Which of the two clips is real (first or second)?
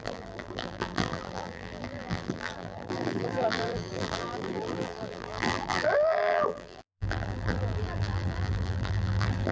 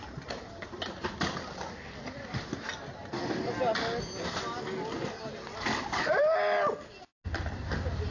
second